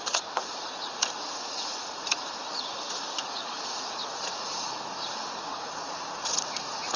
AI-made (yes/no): yes